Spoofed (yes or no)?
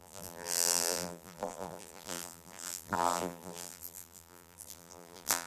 yes